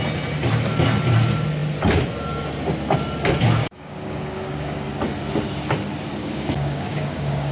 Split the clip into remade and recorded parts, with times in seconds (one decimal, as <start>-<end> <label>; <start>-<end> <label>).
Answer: 0.0-3.6 recorded; 3.6-4.9 remade; 4.9-6.2 recorded; 6.2-7.5 remade